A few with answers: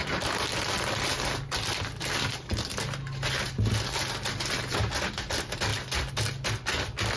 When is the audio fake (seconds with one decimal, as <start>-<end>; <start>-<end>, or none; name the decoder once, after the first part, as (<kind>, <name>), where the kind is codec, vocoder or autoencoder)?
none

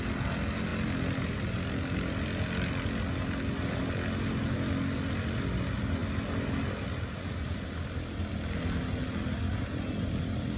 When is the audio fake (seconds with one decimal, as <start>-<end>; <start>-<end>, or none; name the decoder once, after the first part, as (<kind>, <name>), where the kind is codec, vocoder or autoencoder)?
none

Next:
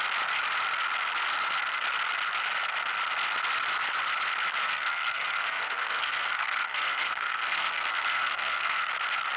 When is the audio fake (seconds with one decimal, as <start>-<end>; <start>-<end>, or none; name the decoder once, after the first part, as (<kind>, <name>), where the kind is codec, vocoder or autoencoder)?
4.6-8.9 (codec, SNAC)

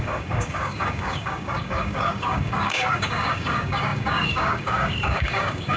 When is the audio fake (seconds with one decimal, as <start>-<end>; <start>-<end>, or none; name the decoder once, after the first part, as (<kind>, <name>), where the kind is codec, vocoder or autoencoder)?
0.0-5.8 (codec, DAC)

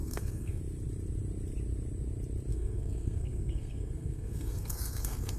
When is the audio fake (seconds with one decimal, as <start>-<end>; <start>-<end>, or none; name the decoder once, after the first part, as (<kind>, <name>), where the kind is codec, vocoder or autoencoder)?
0.0-0.6 (codec, SNAC); 2.5-5.4